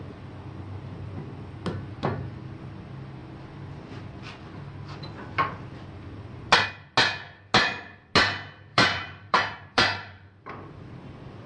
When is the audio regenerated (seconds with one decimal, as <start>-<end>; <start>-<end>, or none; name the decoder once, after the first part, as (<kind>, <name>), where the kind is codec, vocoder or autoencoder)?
8.7-10.5 (vocoder, BigVGAN v2)